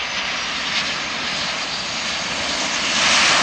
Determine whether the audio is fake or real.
real